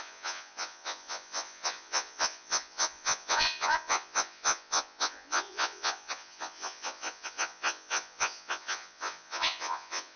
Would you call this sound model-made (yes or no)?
yes